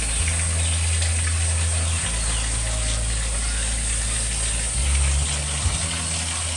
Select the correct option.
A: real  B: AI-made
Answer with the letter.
A